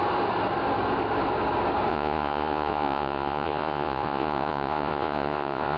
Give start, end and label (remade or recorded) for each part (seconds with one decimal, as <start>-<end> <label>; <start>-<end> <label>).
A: 0.0-1.9 recorded; 1.9-5.8 remade